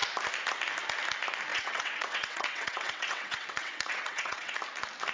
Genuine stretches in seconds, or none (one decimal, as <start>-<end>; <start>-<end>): 0.0-1.5; 4.5-5.1